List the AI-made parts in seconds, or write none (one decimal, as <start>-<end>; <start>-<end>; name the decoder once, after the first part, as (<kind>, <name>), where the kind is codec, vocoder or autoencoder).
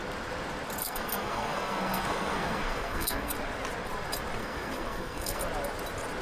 0.8-3.3 (codec, SNAC); 4.4-5.4